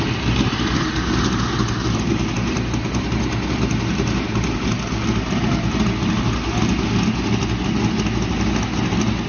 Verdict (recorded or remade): recorded